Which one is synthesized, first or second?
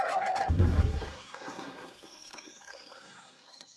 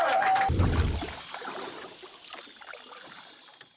first